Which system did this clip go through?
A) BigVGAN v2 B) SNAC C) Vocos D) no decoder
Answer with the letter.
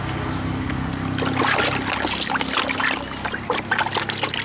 D